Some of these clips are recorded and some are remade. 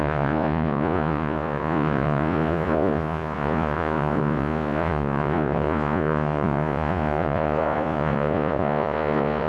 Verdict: remade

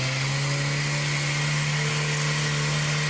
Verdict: recorded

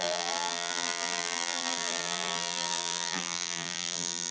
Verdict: remade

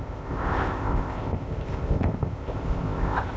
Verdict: remade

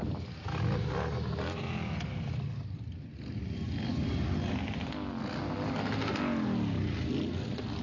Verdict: recorded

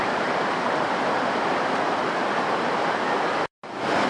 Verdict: recorded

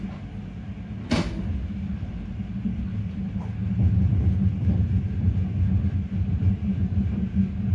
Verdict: recorded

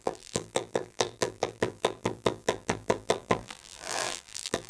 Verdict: remade